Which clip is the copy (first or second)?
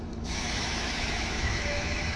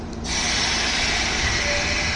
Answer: first